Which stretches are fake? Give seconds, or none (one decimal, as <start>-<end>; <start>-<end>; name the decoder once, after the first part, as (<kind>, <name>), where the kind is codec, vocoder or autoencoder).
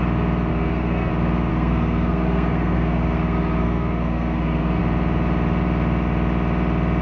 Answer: 0.5-1.1 (codec, SNAC); 1.5-4.8